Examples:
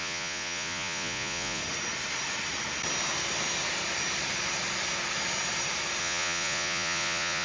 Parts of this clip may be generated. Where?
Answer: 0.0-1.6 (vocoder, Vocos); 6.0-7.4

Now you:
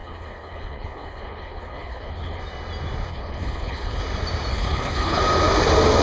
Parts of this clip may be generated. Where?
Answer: 0.0-2.4 (codec, HILCodec); 3.1-4.0; 4.5-5.2

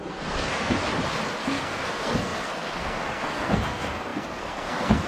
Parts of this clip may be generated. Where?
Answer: 0.0-0.8 (codec, SNAC); 1.4-5.1

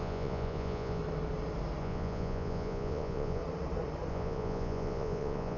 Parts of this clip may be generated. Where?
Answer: 0.0-1.0 (vocoder, Vocos); 1.8-3.4; 4.1-5.6

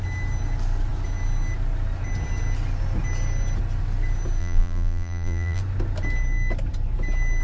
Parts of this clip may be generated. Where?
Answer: 4.4-5.6 (vocoder, BigVGAN v2)